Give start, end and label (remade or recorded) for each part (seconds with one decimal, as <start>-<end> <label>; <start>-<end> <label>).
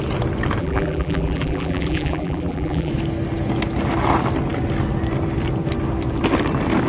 0.0-0.6 recorded; 0.6-2.9 remade; 2.9-6.9 recorded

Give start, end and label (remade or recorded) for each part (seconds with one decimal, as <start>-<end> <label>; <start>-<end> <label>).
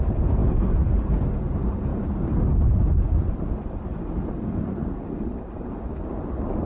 0.0-1.9 recorded; 1.9-2.4 remade; 2.4-3.1 recorded; 3.1-6.1 remade; 6.1-6.7 recorded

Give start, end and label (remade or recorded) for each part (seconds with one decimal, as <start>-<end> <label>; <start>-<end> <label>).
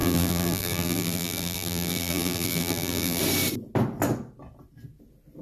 0.0-3.2 remade; 3.2-5.4 recorded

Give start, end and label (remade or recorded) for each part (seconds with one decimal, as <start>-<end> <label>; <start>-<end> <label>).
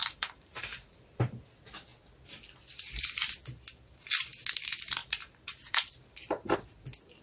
0.0-1.2 remade; 1.2-5.0 recorded; 5.0-5.9 remade; 5.9-7.2 recorded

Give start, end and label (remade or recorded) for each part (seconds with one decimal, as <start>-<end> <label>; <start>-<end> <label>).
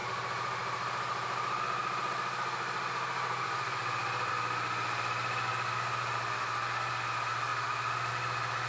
0.0-7.5 remade; 7.5-8.1 recorded; 8.1-8.7 remade